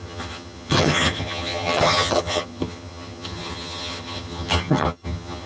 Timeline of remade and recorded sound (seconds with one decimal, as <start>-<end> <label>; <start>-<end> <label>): 0.0-5.5 remade